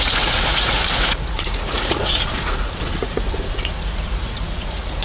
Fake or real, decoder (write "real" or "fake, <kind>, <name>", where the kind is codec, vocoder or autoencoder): fake, vocoder, Vocos